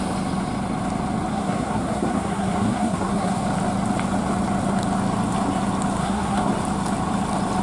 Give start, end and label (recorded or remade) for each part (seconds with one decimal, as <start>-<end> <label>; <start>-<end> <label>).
0.0-1.3 recorded; 1.3-3.4 remade; 3.4-6.0 recorded; 6.0-6.5 remade; 6.5-7.6 recorded